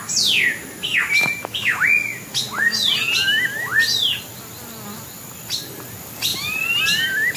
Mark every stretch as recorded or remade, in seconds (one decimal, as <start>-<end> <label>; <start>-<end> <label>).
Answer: 0.0-7.4 recorded